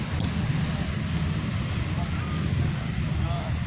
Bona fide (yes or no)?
yes